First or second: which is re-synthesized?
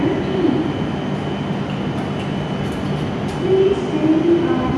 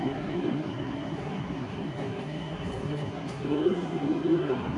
second